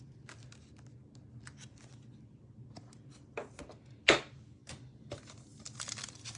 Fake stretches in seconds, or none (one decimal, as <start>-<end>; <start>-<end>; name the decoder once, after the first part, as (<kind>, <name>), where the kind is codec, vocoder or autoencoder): none